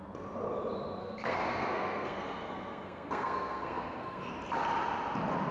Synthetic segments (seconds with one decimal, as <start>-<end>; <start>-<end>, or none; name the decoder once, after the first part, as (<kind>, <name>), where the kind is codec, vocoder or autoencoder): 1.0-4.3 (codec, SNAC)